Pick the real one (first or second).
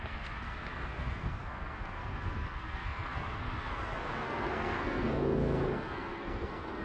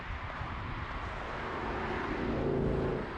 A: second